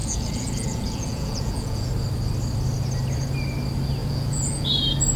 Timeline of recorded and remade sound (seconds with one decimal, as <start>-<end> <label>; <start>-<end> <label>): 0.0-1.9 remade; 1.9-4.0 recorded; 4.0-4.7 remade; 4.7-5.2 recorded